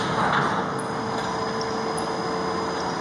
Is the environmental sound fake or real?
real